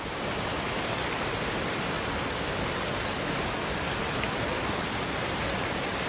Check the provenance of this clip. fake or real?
real